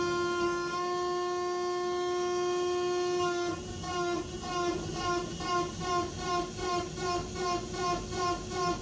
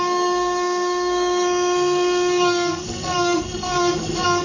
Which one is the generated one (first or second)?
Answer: second